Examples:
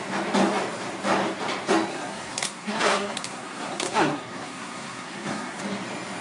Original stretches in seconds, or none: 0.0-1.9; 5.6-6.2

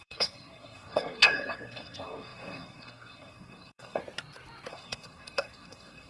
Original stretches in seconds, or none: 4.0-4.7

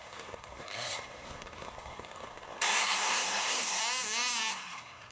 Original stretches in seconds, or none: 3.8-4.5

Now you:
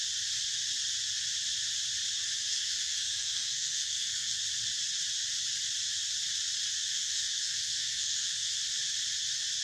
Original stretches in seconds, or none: 0.0-2.5; 4.4-6.9; 8.5-9.6

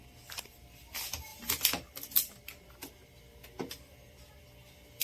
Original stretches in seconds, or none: 0.0-5.0